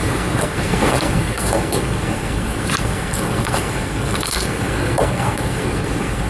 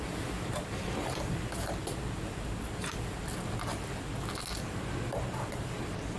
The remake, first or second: first